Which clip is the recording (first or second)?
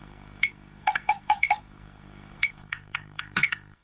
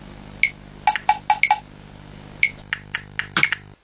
second